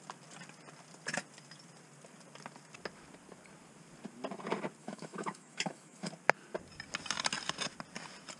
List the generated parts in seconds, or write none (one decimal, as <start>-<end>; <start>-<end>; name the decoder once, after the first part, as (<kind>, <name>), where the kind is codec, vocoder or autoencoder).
4.8-6.1 (autoencoder, DAC-VAE)